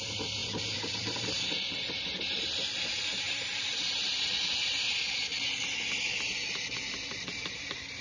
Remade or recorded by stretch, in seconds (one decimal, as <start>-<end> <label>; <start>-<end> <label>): 0.0-5.3 remade; 5.3-6.9 recorded; 6.9-8.0 remade